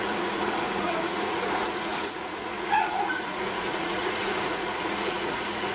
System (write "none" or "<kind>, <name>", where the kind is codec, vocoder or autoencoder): vocoder, Vocos